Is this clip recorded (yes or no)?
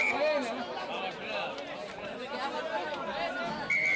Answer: yes